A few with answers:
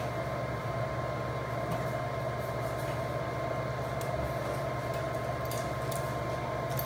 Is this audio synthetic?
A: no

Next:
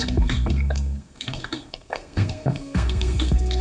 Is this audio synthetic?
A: yes